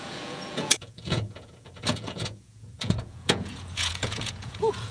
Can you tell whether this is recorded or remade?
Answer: remade